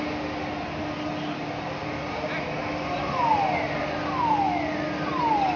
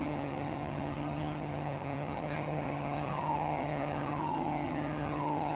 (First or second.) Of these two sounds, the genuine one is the first